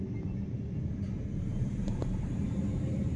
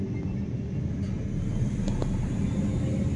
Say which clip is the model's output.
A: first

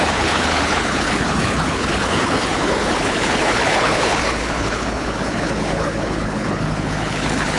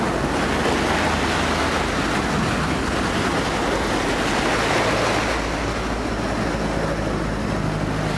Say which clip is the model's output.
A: first